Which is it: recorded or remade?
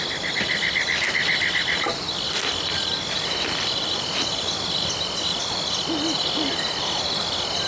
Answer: recorded